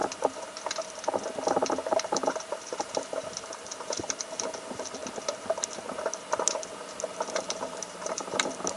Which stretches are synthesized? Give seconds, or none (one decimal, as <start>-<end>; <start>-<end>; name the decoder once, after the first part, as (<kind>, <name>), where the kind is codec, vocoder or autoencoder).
1.9-5.0 (vocoder, BigVGAN v2); 7.3-8.8